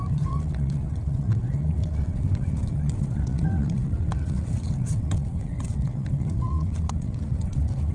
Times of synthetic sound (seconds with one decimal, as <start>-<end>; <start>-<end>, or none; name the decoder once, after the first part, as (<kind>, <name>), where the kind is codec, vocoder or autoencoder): 0.0-7.9 (vocoder, WaveNeXt)